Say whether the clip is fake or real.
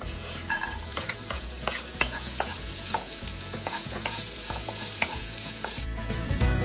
fake